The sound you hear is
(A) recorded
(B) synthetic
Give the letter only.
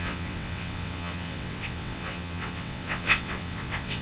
B